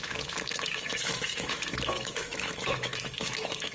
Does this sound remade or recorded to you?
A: remade